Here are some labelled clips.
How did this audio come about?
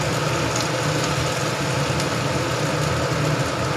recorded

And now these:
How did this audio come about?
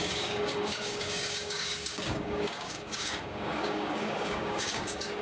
remade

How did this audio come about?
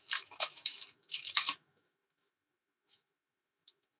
remade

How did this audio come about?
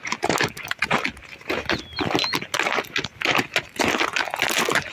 recorded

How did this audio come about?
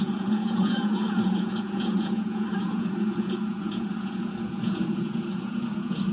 remade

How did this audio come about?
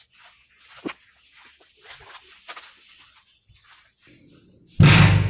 recorded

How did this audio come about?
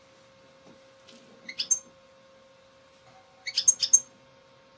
recorded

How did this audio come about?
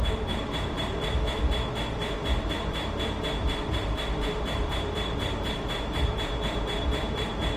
remade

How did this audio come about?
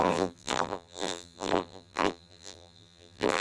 remade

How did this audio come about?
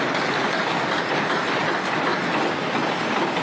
recorded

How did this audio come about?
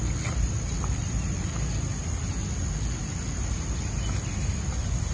recorded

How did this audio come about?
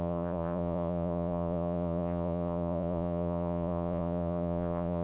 remade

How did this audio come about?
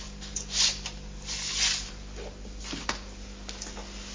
recorded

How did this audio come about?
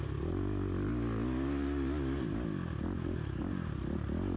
recorded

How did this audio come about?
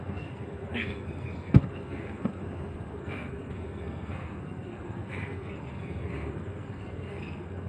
remade